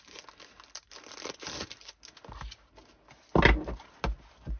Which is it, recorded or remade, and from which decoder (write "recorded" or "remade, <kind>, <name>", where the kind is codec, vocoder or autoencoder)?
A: recorded